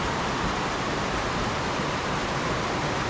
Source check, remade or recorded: remade